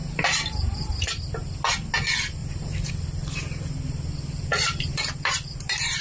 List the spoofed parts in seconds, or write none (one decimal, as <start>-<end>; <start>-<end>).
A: 0.0-0.9; 2.4-2.9; 4.5-6.0